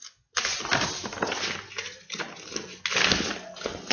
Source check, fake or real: real